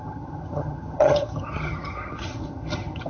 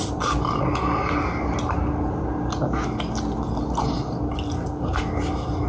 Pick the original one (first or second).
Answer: second